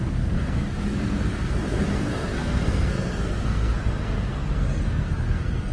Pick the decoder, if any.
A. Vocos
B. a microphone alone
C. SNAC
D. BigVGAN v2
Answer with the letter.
C